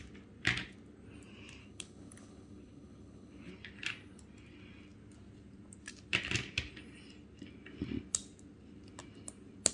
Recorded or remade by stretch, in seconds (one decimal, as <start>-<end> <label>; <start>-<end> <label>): 0.0-1.6 recorded; 1.6-3.5 remade; 3.5-9.7 recorded